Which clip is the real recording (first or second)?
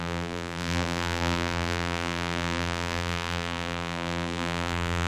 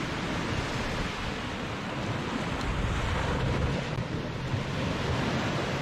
second